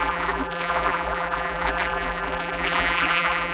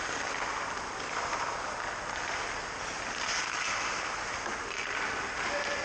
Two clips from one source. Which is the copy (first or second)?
first